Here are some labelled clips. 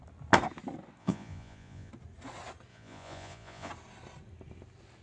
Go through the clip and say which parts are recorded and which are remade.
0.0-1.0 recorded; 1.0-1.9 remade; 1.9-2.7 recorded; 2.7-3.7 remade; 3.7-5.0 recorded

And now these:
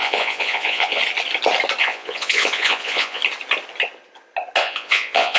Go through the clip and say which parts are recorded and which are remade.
0.0-1.0 remade; 1.0-1.8 recorded; 1.8-3.2 remade; 3.2-4.6 recorded; 4.6-5.4 remade

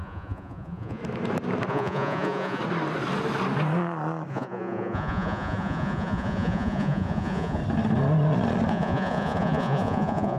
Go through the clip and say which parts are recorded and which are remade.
0.0-1.0 remade; 1.0-1.7 recorded; 1.7-2.6 remade; 2.6-4.3 recorded; 4.3-7.6 remade; 7.6-8.7 recorded; 8.7-10.4 remade

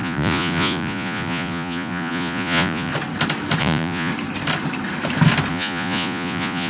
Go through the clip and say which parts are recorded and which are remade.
0.0-2.9 remade; 2.9-3.6 recorded; 3.6-4.1 remade; 4.1-5.5 recorded; 5.5-6.7 remade

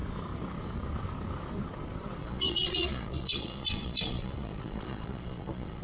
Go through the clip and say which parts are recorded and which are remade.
0.0-2.2 recorded; 2.2-5.8 remade

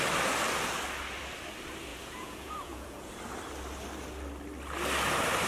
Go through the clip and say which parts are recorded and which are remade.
0.0-1.9 recorded; 1.9-3.3 remade; 3.3-5.5 recorded